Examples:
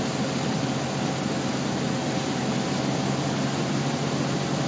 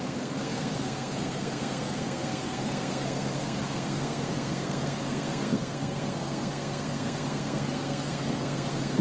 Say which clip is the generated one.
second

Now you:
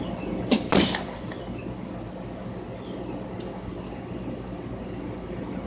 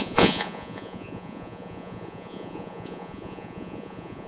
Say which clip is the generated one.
second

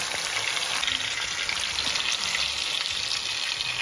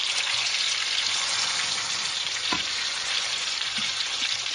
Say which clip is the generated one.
second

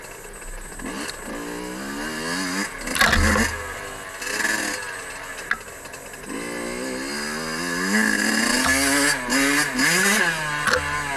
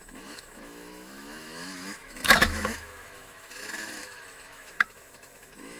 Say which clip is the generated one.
second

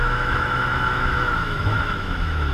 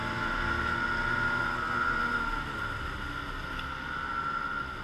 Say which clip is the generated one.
first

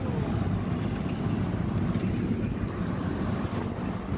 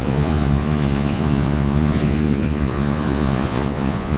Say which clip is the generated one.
second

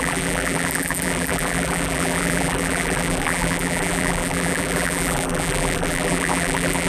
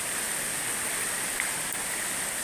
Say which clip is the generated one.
first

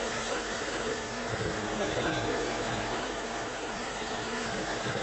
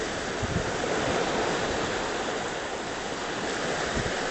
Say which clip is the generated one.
first